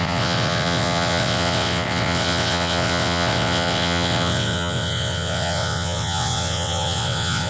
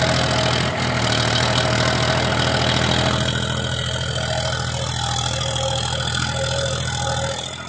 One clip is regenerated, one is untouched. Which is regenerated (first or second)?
first